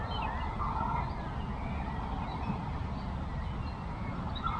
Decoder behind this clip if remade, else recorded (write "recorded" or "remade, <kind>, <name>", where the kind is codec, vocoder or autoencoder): recorded